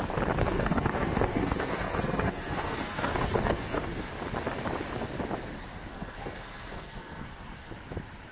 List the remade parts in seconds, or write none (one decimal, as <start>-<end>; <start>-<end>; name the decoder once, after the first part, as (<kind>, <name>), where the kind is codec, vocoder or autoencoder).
0.4-4.1 (codec, SNAC); 5.9-7.7